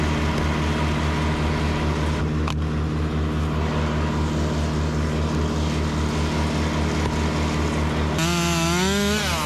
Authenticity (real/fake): real